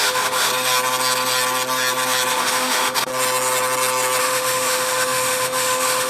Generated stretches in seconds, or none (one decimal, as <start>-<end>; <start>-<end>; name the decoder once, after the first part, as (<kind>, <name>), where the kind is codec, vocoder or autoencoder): 0.0-0.5 (autoencoder, DAC-VAE); 2.3-3.1; 4.2-6.1